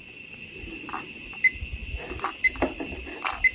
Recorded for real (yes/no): yes